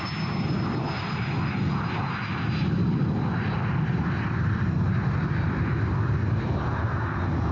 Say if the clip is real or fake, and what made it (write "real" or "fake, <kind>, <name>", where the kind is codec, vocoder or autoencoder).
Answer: real